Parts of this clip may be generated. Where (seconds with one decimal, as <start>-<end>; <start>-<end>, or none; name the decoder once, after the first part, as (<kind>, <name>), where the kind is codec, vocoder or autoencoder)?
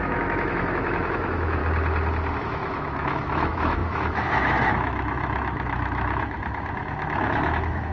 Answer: 0.0-1.6 (autoencoder, DAC-VAE); 2.4-7.9